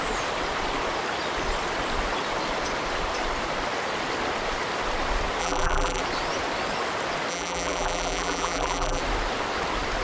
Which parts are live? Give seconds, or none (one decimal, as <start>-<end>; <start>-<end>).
0.0-5.4; 6.0-7.3; 9.0-10.0